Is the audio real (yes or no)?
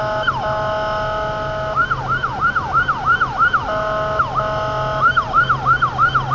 yes